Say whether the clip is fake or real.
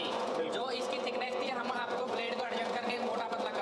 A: fake